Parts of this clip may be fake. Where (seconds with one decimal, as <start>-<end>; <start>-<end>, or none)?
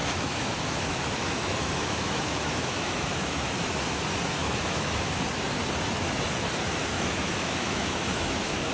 0.0-3.5; 4.4-5.2; 6.9-8.7